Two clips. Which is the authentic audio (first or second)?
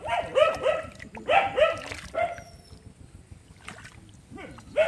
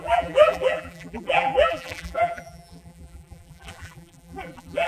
first